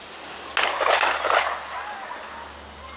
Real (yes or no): yes